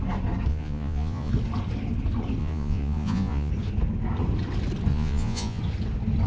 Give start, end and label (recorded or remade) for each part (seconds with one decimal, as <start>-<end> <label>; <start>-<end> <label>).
0.0-0.5 recorded; 0.5-1.3 remade; 1.3-2.4 recorded; 2.4-3.5 remade; 3.5-4.9 recorded; 4.9-5.6 remade; 5.6-6.3 recorded